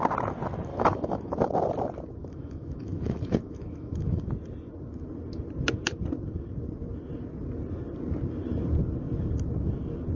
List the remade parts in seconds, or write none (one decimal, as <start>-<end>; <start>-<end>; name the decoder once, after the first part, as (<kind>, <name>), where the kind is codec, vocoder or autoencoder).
0.7-1.5 (autoencoder, DAC-VAE); 2.2-4.3